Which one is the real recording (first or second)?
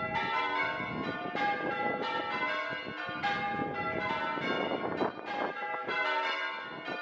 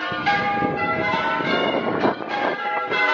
first